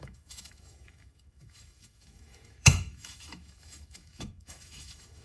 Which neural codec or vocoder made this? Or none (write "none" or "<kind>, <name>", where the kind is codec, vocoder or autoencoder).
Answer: autoencoder, DAC-VAE